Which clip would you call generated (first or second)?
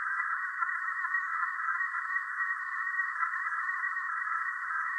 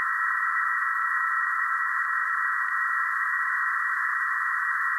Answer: first